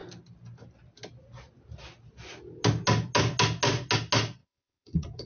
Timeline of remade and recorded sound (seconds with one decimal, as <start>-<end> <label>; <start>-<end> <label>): 0.0-4.4 recorded; 4.4-5.3 remade